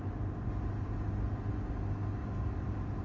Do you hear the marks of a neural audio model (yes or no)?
no